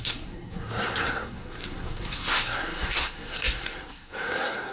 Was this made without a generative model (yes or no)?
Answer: no